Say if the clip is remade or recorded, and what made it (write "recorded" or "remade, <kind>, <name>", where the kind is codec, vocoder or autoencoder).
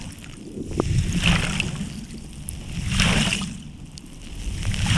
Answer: recorded